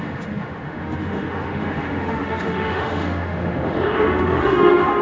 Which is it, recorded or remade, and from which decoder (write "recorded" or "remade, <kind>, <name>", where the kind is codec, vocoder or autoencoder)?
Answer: remade, autoencoder, DAC-VAE